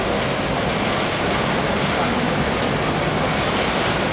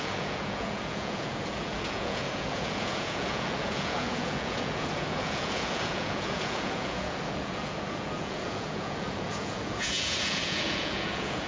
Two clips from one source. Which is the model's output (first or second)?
second